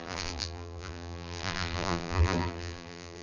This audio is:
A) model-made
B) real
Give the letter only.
A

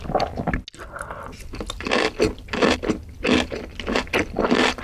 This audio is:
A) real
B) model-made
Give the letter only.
A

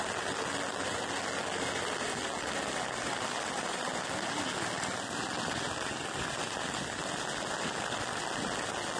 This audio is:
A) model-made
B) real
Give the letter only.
B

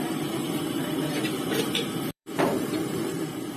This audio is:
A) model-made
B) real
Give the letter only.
A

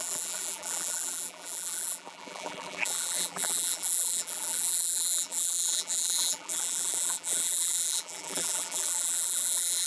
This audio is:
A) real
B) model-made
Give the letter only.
B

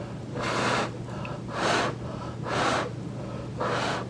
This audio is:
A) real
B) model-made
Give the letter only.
A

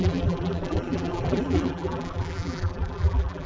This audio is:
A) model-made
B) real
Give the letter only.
A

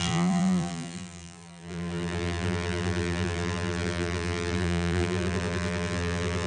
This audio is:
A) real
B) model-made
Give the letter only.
B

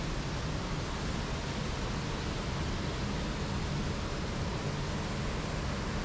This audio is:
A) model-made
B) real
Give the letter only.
B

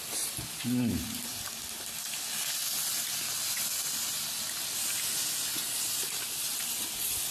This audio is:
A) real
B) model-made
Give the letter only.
A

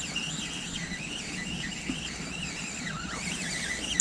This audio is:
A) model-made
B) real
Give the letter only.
A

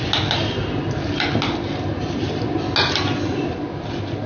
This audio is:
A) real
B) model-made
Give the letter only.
A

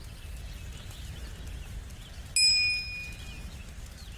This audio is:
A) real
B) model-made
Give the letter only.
A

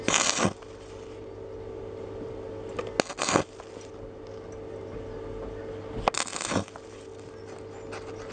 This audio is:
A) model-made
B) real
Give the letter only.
B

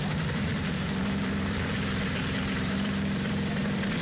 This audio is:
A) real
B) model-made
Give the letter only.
B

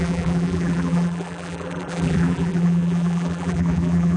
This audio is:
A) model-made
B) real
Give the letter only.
A